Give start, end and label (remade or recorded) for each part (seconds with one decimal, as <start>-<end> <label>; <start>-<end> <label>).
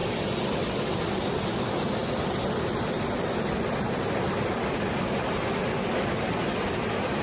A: 0.0-7.2 recorded